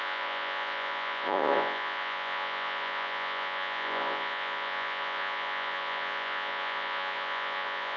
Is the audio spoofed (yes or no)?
yes